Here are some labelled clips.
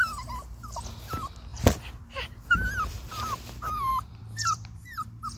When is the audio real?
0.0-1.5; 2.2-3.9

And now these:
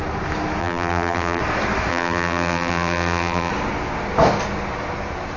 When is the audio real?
0.0-0.6; 1.4-1.9; 3.5-5.4

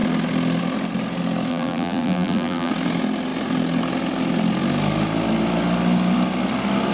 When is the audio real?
0.0-1.5; 2.7-6.9

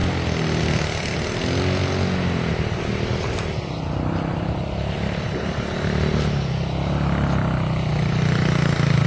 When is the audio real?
0.0-9.1

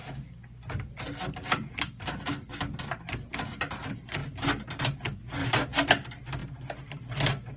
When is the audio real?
0.0-5.4; 5.9-7.6

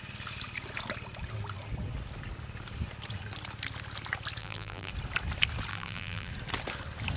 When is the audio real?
0.0-4.4; 4.9-5.7; 6.3-7.2